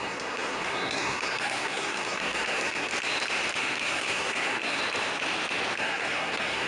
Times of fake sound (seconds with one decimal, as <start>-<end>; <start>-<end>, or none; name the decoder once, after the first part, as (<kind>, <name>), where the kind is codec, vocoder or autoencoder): 0.0-2.9 (codec, SNAC); 3.6-4.8; 5.8-6.7